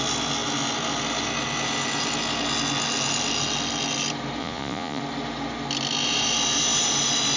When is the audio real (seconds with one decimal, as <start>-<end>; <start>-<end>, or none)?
0.0-4.4; 5.0-7.4